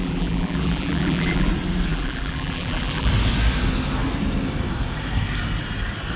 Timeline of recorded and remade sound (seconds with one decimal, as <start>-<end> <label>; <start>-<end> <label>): 0.0-1.5 remade; 1.5-1.9 recorded; 1.9-3.1 remade; 3.1-6.2 recorded